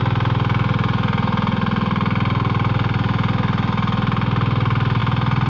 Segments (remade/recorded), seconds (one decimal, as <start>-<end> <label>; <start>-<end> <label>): 0.0-5.5 recorded